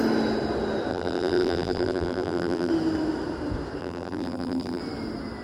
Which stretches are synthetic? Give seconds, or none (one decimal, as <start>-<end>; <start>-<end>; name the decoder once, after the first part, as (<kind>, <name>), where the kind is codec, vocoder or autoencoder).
0.9-2.7 (vocoder, BigVGAN v2); 3.8-4.8